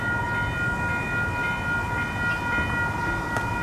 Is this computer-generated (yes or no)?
no